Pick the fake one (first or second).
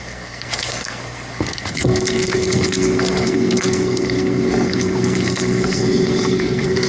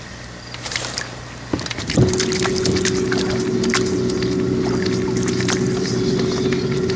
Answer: first